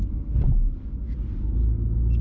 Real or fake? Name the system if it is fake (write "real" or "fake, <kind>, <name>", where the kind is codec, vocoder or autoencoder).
real